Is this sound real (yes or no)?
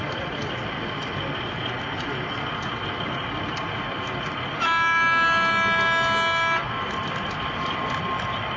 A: yes